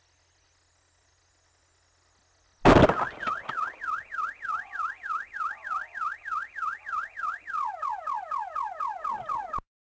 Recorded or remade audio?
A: recorded